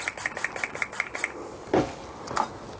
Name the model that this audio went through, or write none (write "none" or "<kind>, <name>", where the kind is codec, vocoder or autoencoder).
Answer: none